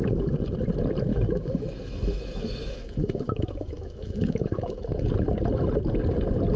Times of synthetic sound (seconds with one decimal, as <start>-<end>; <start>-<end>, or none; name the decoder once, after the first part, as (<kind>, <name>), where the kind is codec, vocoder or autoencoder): 1.1-5.1 (autoencoder, DAC-VAE)